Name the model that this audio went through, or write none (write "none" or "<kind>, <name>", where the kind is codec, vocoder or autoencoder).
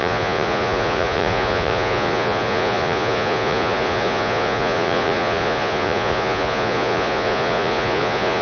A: vocoder, Vocos